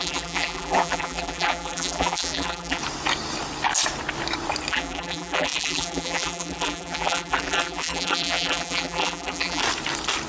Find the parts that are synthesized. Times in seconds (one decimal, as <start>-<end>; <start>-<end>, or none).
0.0-2.8; 4.7-9.6